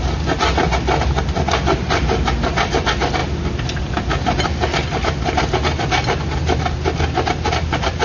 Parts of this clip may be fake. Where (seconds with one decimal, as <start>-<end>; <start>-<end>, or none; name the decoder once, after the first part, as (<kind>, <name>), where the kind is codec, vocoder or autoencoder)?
none